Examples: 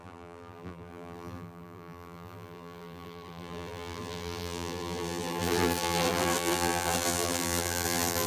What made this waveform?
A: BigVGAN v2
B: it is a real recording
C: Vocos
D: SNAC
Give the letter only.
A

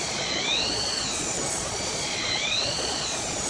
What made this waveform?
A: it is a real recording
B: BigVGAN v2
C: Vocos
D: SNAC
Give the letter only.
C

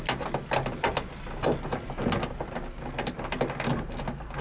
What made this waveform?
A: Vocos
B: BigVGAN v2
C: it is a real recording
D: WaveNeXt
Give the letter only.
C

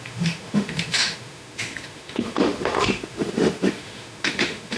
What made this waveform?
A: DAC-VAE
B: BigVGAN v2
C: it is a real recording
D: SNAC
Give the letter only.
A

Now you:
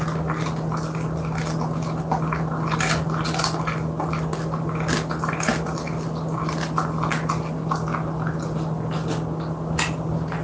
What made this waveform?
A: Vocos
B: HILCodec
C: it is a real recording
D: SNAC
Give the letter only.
C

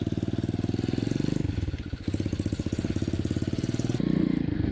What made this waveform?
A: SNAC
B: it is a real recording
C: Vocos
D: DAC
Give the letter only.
B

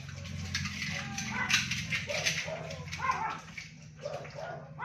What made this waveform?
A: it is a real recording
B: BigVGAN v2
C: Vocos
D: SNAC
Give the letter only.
A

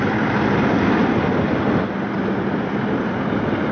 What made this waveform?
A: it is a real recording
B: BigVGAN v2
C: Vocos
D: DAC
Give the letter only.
A